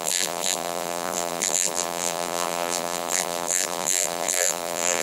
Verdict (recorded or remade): remade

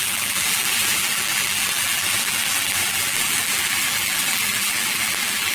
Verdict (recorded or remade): remade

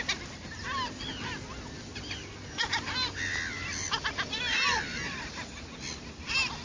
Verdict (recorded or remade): recorded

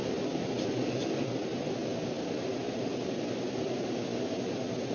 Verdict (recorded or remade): recorded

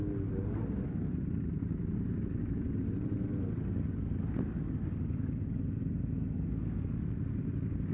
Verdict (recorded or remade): recorded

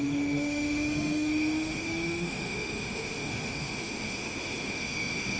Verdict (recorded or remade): remade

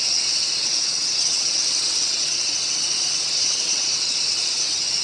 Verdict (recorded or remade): remade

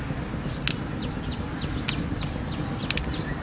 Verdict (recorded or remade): recorded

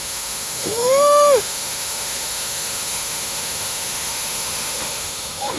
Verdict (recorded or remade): remade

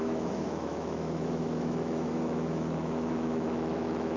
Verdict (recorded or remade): remade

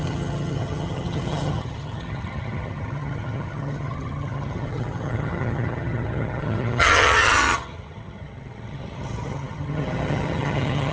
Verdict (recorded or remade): remade